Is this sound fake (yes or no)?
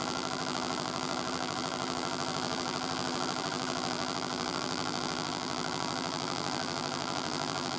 yes